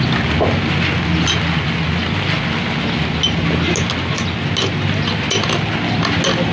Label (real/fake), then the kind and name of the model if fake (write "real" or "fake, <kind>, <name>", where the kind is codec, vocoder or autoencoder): real